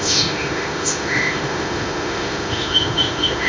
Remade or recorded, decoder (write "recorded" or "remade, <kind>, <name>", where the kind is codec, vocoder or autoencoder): remade, autoencoder, DAC-VAE